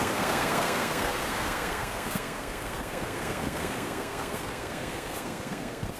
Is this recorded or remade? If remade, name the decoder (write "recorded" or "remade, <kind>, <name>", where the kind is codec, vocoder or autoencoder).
remade, codec, SNAC